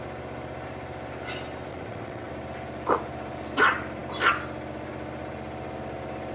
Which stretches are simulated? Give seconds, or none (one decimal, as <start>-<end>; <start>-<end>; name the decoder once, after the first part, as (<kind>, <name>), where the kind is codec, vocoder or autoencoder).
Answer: 1.7-2.3 (vocoder, WaveNeXt)